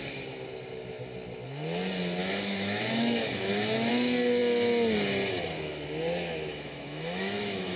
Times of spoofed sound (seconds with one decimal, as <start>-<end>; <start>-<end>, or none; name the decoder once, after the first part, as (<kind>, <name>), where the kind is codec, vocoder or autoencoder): 2.2-3.9 (autoencoder, DAC-VAE); 6.5-7.8